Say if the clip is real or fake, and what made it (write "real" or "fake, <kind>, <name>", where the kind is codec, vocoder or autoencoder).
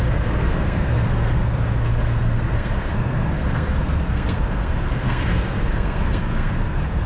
fake, codec, SNAC